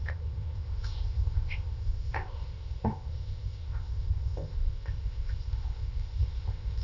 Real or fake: fake